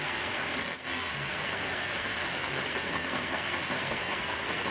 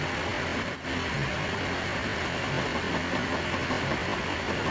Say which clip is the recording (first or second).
second